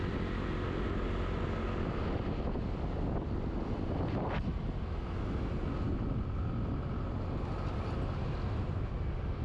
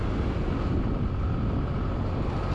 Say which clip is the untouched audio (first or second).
first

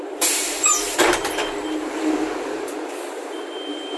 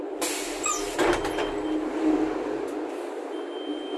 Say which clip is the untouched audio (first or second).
second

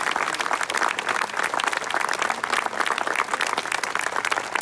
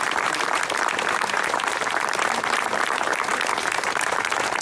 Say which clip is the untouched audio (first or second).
first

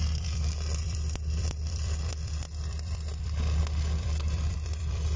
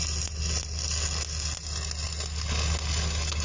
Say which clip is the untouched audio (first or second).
second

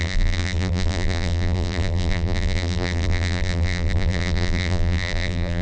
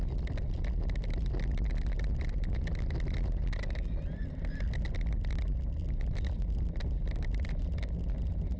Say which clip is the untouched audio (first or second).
second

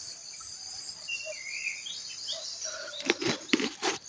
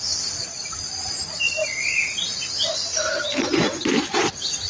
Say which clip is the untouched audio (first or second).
second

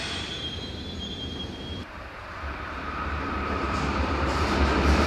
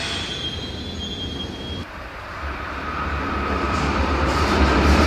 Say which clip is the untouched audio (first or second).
second